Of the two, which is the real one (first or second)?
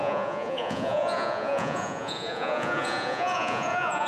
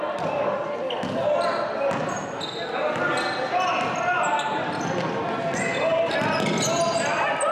second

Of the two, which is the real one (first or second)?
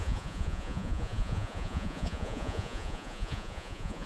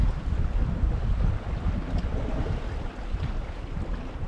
second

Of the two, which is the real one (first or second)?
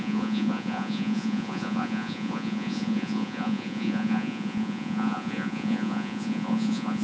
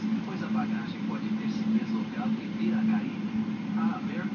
second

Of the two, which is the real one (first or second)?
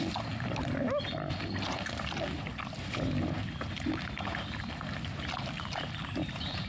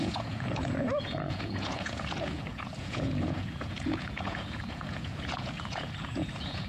first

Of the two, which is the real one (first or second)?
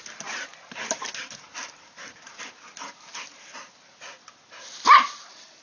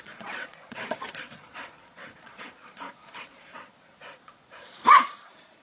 first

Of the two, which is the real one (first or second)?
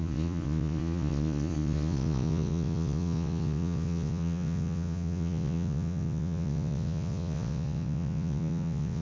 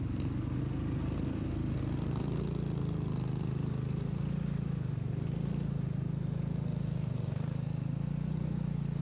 second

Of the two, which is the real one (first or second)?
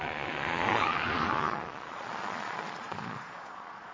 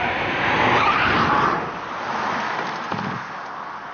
second